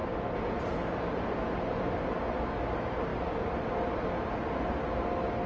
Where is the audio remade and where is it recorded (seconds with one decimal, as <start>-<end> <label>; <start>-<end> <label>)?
0.0-5.5 recorded